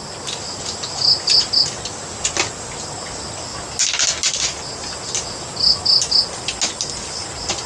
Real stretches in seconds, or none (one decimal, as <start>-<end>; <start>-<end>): 0.0-7.7